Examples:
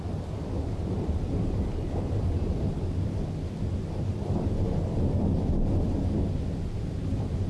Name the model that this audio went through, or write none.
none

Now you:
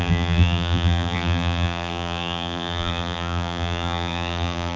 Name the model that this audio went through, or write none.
vocoder, BigVGAN v2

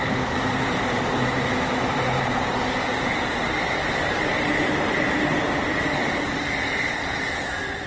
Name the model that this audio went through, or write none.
vocoder, BigVGAN v2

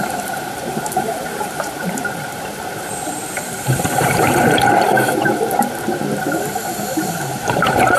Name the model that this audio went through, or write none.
vocoder, BigVGAN v2